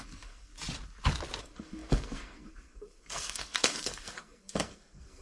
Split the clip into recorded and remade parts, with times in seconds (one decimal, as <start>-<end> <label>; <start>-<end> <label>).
0.0-0.5 remade; 0.5-1.4 recorded; 1.4-5.2 remade